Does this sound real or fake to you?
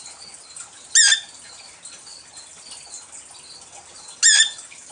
real